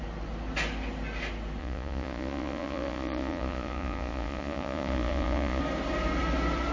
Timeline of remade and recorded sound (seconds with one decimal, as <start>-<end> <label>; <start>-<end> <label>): 0.0-1.6 recorded; 1.6-5.6 remade; 5.6-6.7 recorded